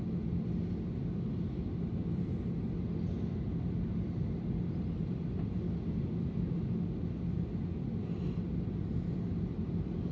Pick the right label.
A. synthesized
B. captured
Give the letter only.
B